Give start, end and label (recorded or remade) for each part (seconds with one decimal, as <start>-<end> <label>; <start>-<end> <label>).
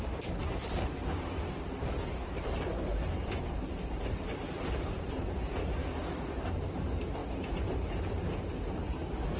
0.0-0.6 remade; 0.6-1.8 recorded; 1.8-5.9 remade; 5.9-6.5 recorded; 6.5-9.4 remade